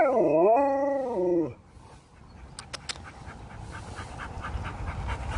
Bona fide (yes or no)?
yes